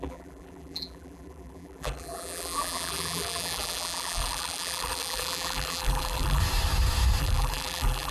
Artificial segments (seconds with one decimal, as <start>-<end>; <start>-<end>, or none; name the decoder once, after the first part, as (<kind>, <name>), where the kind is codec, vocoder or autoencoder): 0.0-6.4 (vocoder, BigVGAN v2); 7.2-8.1